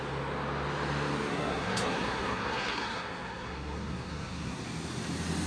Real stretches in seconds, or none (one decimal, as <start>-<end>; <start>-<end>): 0.0-1.3; 4.6-5.5